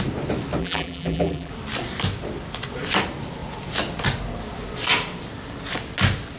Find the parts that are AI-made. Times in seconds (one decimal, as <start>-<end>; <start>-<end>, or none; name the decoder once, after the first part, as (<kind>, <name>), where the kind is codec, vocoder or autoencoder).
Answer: 0.6-1.5 (vocoder, BigVGAN v2)